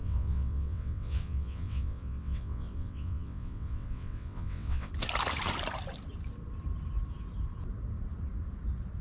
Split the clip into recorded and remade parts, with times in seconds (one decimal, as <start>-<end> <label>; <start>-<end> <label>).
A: 0.0-4.9 remade; 4.9-9.0 recorded